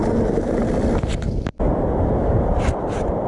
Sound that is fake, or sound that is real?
real